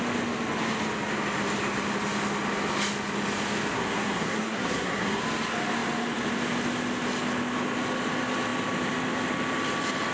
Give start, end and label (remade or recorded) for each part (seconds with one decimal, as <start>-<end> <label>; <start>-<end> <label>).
0.0-3.7 recorded; 3.7-5.2 remade; 5.2-10.1 recorded